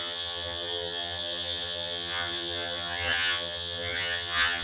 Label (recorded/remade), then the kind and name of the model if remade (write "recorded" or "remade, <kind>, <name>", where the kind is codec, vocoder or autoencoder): remade, vocoder, HiFi-GAN